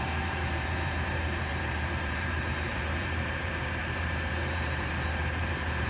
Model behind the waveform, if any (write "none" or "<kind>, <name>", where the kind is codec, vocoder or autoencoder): vocoder, BigVGAN v2